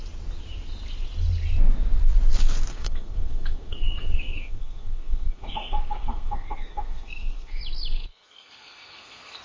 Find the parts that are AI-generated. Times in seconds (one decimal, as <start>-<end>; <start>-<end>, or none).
2.7-7.6; 8.1-9.4